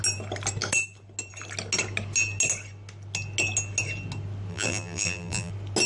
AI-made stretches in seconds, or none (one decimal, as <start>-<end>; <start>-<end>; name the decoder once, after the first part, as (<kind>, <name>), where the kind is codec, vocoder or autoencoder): 4.5-5.5 (vocoder, BigVGAN v2)